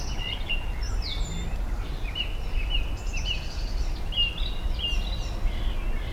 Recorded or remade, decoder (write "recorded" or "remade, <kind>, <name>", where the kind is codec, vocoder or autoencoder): recorded